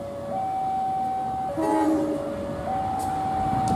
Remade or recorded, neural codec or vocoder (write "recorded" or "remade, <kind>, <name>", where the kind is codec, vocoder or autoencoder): recorded